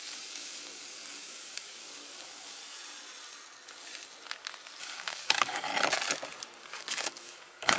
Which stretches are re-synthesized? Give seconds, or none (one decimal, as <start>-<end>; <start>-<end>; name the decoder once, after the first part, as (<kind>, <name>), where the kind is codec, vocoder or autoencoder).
0.0-2.6 (codec, DAC); 4.8-5.7; 6.6-7.8

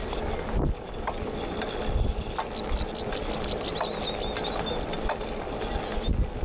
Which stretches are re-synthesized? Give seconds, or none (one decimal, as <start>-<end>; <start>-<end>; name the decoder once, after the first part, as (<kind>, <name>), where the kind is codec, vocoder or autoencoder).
none